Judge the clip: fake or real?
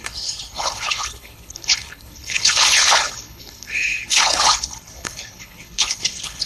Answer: fake